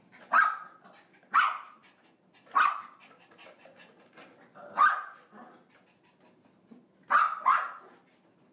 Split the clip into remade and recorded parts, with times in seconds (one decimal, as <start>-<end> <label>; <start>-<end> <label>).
0.0-8.5 recorded